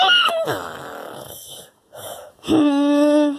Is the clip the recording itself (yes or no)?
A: no